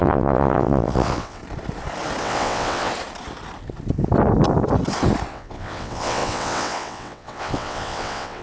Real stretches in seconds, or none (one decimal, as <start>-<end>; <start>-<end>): 1.4-2.2; 2.9-5.3